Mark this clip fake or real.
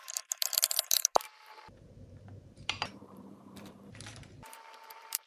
fake